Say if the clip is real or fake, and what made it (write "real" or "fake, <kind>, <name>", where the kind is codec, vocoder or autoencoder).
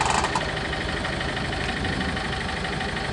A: real